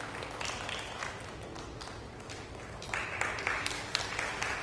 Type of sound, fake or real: real